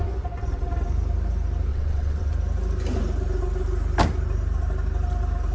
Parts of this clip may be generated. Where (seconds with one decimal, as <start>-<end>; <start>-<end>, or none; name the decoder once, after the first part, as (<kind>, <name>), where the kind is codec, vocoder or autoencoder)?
1.7-2.3 (vocoder, WaveNeXt)